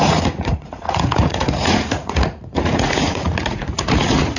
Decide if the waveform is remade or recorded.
remade